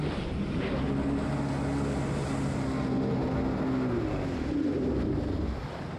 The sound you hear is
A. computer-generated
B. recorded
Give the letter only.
B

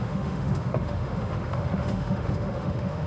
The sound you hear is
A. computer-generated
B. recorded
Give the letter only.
A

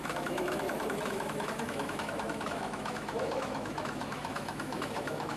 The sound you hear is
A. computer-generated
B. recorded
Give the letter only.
A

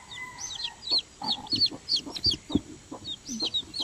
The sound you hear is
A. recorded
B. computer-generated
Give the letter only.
A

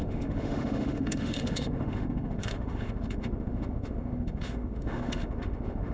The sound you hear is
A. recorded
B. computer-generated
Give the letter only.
B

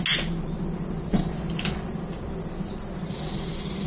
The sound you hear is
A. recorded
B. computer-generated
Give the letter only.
A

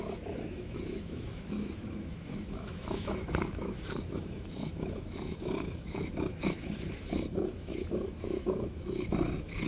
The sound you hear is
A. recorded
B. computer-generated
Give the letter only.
B